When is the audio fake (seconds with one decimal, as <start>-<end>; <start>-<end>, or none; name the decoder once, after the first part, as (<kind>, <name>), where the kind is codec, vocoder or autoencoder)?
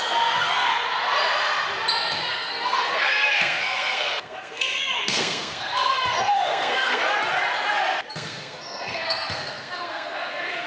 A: 0.0-0.7 (codec, SNAC); 2.3-7.0; 8.1-10.7